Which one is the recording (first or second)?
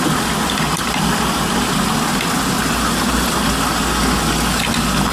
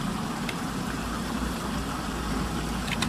first